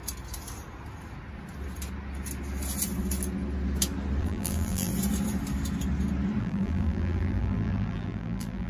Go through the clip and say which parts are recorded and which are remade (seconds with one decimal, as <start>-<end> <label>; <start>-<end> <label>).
0.0-4.2 recorded; 4.2-4.9 remade; 4.9-6.4 recorded; 6.4-8.7 remade